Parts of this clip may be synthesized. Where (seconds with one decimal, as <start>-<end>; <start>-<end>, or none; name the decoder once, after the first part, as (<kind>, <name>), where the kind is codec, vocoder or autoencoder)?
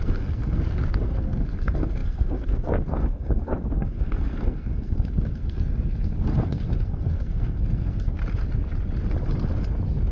0.0-8.2 (codec, SNAC)